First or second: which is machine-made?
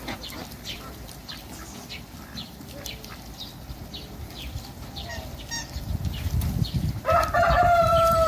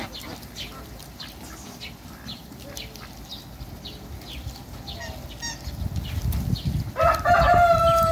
first